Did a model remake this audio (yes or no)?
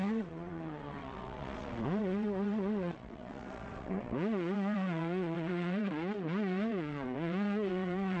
yes